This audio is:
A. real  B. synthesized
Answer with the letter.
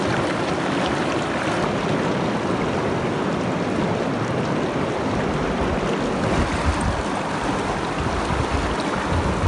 A